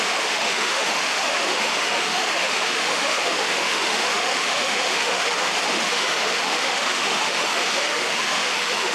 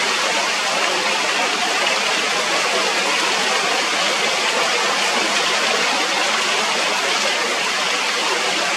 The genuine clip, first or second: second